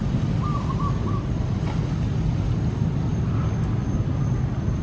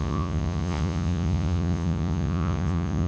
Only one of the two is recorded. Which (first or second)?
first